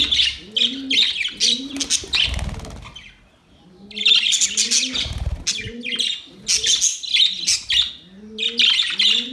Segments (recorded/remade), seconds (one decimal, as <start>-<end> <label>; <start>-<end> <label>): 0.0-9.3 recorded